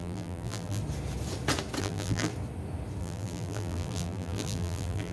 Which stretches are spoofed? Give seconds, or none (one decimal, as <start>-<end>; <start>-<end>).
0.0-0.8; 1.8-2.3; 3.0-5.1